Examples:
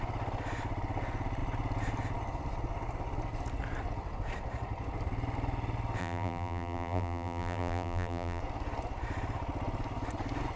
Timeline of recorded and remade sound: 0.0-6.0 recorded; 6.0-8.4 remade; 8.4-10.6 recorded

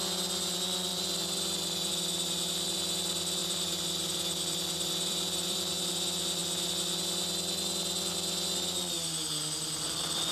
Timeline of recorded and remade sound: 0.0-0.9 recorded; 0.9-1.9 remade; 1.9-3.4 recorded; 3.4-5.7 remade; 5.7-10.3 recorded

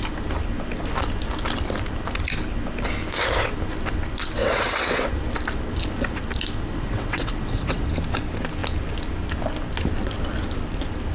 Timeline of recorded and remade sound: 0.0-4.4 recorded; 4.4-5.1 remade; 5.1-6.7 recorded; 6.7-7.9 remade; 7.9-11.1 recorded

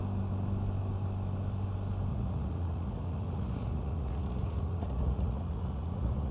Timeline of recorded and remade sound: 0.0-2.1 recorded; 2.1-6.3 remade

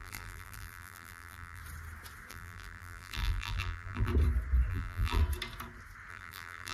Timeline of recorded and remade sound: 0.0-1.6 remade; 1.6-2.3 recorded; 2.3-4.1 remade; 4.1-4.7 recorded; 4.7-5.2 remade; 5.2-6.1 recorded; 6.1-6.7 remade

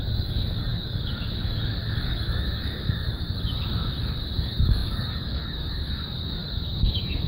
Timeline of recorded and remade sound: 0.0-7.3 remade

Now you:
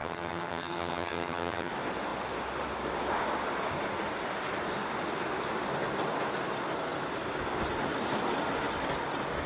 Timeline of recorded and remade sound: 0.0-1.7 remade; 1.7-9.5 recorded